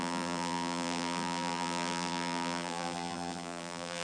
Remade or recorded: remade